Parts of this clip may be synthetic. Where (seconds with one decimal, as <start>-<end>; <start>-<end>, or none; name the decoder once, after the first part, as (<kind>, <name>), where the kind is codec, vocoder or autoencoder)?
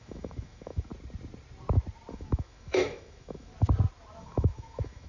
0.0-0.9 (autoencoder, DAC-VAE); 2.1-3.5; 4.2-5.1